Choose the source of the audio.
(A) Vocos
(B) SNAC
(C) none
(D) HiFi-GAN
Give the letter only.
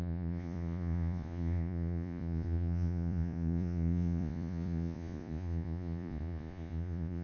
A